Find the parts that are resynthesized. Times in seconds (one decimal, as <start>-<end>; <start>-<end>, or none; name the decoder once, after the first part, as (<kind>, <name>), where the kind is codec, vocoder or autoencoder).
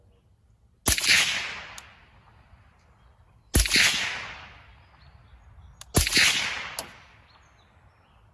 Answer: none